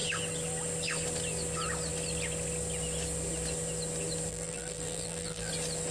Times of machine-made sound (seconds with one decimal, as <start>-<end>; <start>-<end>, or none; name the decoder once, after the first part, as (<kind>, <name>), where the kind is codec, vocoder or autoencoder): 4.3-5.5 (vocoder, BigVGAN v2)